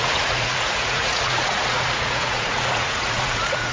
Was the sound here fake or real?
fake